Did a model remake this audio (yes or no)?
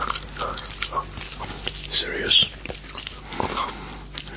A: no